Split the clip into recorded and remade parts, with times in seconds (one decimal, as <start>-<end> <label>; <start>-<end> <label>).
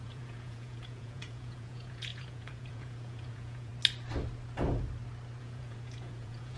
0.0-3.7 remade; 3.7-5.4 recorded; 5.4-6.6 remade